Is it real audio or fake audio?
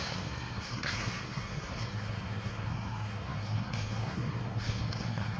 fake